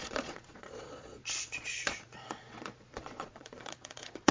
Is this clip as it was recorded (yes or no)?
no